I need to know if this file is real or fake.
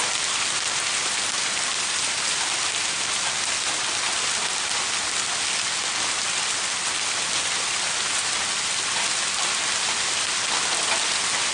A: real